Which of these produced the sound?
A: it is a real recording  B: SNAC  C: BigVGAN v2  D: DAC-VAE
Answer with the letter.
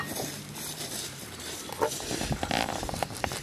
C